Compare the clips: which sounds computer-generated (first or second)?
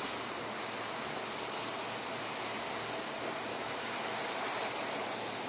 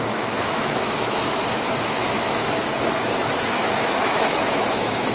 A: second